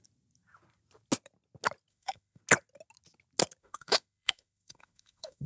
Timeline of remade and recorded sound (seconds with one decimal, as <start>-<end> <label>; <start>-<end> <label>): 0.0-1.9 recorded; 1.9-2.4 remade; 2.4-3.6 recorded; 3.6-5.5 remade